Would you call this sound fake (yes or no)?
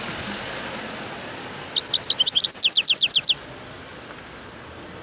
no